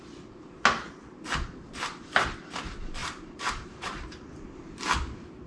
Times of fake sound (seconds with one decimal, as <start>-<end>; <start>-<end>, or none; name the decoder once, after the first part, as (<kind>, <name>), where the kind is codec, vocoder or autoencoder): 3.0-4.1 (vocoder, BigVGAN v2)